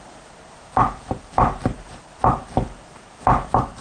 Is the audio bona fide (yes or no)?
no